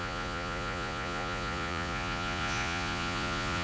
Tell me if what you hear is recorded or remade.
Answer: remade